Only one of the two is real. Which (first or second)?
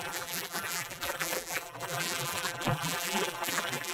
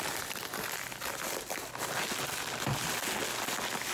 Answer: second